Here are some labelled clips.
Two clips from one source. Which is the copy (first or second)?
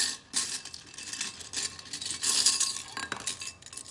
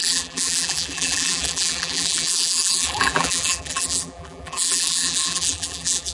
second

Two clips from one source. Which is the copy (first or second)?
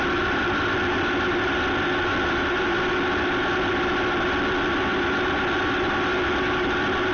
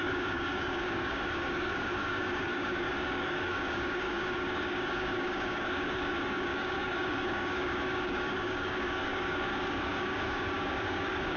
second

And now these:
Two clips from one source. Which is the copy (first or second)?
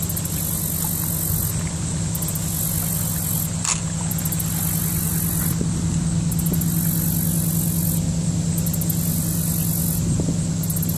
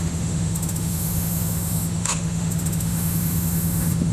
second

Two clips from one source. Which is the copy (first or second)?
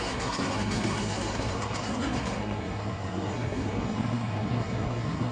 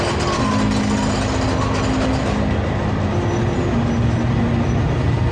first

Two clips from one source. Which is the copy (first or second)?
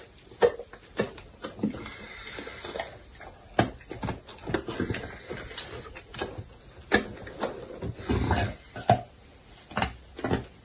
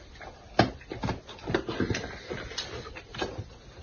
second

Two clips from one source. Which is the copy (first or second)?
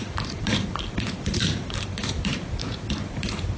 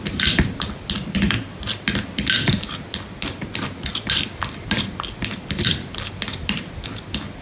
first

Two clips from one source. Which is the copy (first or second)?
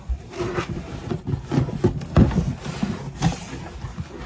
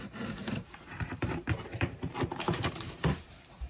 second